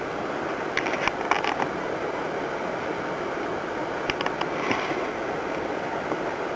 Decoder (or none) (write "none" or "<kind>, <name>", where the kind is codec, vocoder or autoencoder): none